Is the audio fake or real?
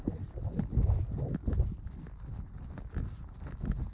real